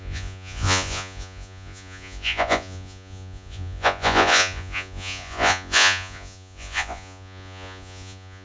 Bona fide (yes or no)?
no